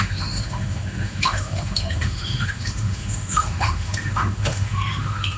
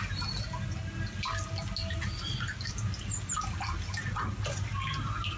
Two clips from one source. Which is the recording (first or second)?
second